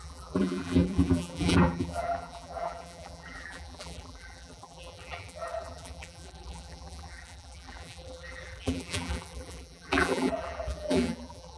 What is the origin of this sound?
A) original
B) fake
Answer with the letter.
B